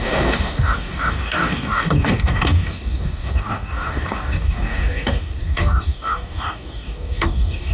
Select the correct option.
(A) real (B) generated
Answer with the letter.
B